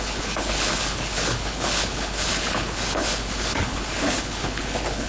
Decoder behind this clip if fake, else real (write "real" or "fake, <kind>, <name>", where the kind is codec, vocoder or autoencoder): fake, codec, HILCodec